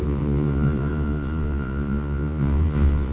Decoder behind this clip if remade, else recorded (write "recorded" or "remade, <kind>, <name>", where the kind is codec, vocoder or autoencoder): remade, vocoder, Vocos